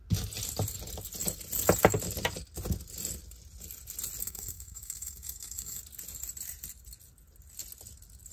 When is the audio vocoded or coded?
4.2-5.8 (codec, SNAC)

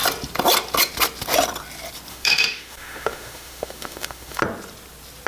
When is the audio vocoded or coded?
2.1-4.4 (autoencoder, DAC-VAE)

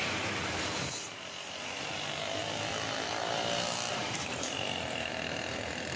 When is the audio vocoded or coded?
none

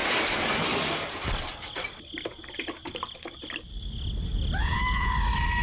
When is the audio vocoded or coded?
4.6-5.1 (vocoder, Vocos)

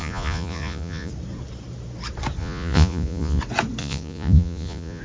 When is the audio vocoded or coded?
0.0-1.1 (vocoder, Vocos); 2.4-3.4; 3.8-5.0

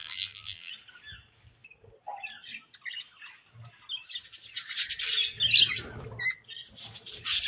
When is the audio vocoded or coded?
0.0-0.7 (vocoder, BigVGAN v2)